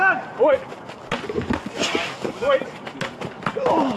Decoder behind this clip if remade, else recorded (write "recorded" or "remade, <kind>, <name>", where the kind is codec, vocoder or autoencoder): recorded